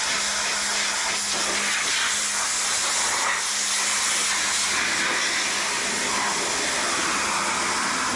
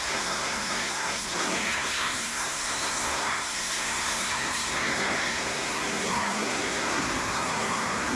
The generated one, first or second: second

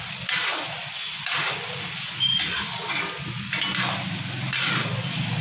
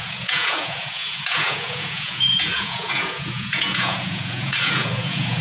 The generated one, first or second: second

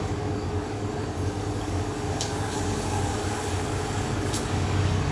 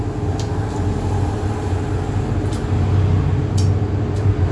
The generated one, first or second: first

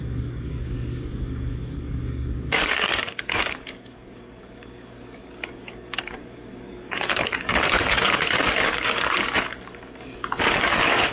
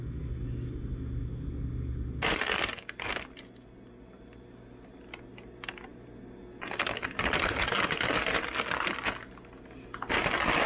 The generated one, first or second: first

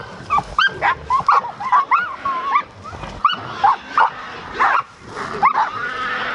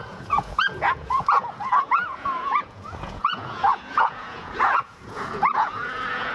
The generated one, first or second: second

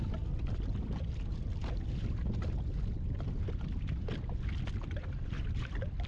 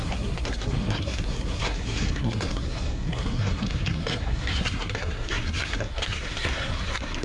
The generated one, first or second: second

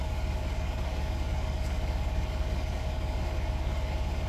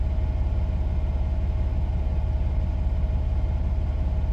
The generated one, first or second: first